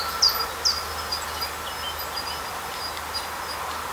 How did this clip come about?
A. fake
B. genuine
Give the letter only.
B